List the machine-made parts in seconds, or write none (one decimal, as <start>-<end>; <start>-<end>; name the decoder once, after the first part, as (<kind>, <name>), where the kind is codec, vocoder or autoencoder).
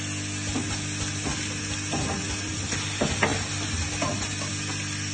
none